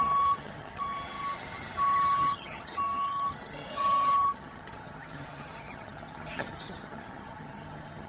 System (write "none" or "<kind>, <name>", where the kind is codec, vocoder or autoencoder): vocoder, HiFi-GAN